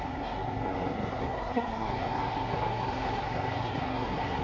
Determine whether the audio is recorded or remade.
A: remade